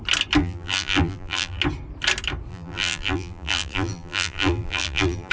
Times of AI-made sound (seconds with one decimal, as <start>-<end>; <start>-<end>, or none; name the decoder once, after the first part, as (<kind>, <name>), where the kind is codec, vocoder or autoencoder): 0.4-1.6 (vocoder, BigVGAN v2); 2.5-5.3